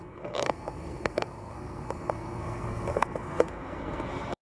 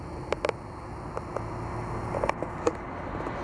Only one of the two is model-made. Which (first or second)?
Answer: first